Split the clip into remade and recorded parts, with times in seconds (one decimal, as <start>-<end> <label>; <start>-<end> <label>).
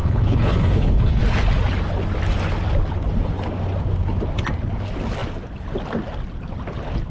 0.0-1.2 remade; 1.2-7.1 recorded